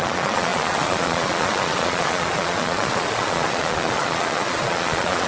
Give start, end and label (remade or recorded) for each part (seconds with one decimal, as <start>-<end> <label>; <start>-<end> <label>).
0.0-5.3 remade